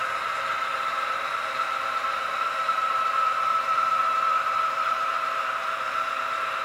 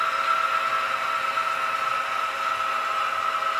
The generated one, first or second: first